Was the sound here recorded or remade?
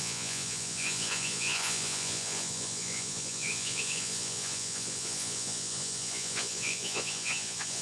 remade